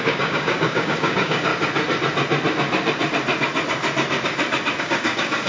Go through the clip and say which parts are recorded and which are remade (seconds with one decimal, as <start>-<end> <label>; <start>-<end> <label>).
0.0-1.5 remade; 1.5-4.8 recorded; 4.8-5.5 remade